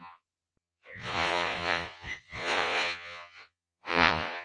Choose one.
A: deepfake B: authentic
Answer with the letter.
A